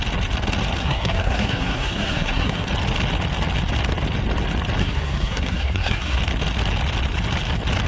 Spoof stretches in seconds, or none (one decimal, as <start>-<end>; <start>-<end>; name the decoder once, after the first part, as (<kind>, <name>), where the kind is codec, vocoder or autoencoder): 0.8-2.7 (codec, SNAC); 4.8-6.2